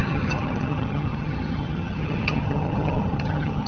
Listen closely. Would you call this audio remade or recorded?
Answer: remade